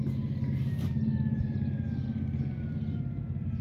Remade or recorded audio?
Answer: recorded